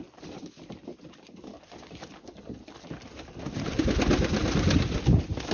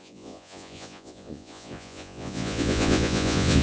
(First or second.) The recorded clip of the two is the first